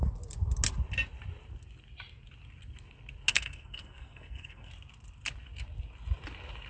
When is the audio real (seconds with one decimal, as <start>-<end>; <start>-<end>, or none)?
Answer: 0.0-3.3; 4.7-6.7